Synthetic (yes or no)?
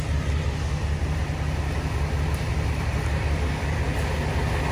no